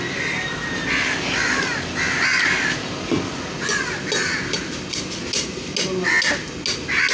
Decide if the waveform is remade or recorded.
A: recorded